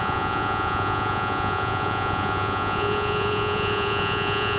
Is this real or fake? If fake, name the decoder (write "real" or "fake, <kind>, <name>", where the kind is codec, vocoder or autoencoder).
fake, vocoder, Vocos